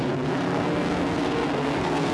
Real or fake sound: fake